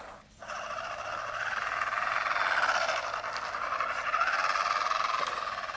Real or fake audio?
real